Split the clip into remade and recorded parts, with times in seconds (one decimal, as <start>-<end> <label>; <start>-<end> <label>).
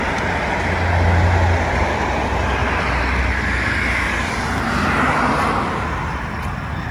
0.0-2.6 recorded; 2.6-3.2 remade; 3.2-6.9 recorded